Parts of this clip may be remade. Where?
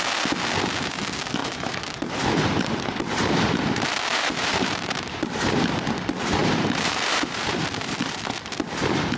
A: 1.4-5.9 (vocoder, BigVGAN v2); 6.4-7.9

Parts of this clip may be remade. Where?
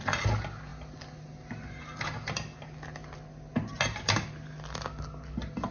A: none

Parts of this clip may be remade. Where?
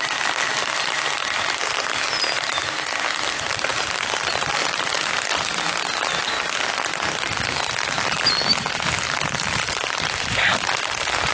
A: 9.6-10.2 (vocoder, BigVGAN v2)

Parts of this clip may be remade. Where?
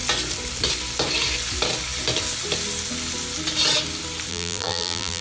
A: 4.3-5.2 (vocoder, BigVGAN v2)